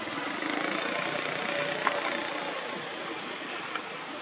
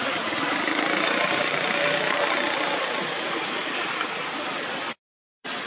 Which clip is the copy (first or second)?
second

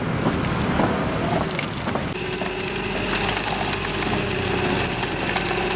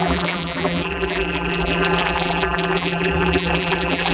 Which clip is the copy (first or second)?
second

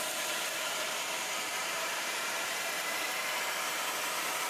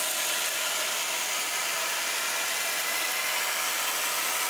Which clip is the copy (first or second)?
first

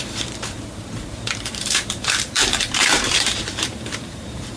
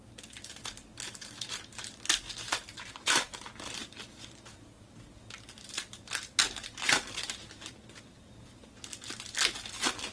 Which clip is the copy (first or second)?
first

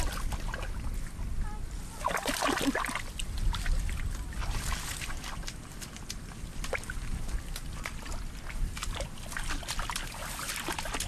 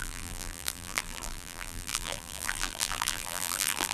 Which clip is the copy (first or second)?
second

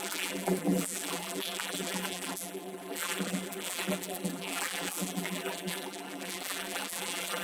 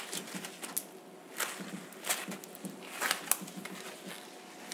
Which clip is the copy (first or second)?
first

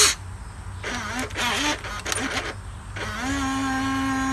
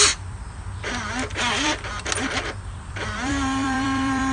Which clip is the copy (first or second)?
second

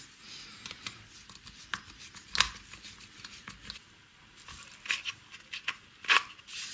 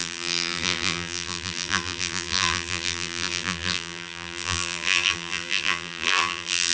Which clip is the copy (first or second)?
second